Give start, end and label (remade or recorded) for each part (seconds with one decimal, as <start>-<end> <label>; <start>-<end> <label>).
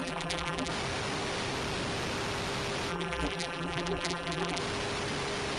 0.0-0.7 remade; 0.7-2.9 recorded; 2.9-4.6 remade; 4.6-5.6 recorded